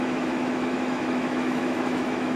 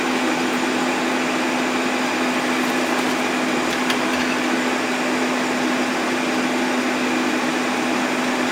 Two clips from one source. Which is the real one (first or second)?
second